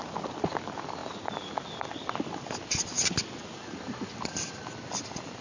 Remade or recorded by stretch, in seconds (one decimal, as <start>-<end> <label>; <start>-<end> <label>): 0.0-5.4 recorded